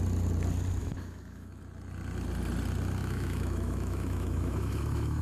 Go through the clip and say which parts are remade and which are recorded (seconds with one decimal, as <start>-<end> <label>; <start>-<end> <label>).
0.0-0.8 recorded; 0.8-1.6 remade; 1.6-3.0 recorded; 3.0-5.2 remade